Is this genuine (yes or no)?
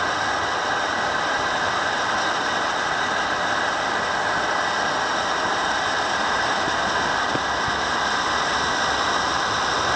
yes